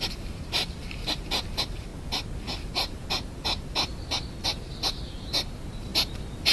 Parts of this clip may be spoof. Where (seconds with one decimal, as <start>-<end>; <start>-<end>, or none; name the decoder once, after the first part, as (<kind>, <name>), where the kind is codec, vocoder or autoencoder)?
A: 0.0-1.9 (vocoder, BigVGAN v2); 2.7-3.9; 5.1-6.5